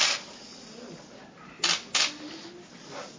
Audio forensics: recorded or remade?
recorded